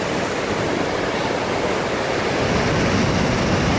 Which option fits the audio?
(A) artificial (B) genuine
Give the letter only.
B